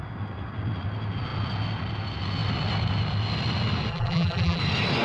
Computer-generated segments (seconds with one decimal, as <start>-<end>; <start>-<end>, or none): 3.9-4.6